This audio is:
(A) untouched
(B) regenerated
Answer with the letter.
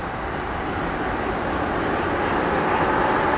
A